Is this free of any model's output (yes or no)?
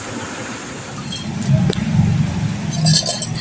yes